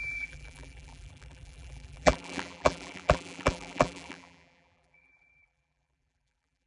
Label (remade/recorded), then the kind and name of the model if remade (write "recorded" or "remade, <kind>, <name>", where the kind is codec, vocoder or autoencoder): remade, vocoder, BigVGAN v2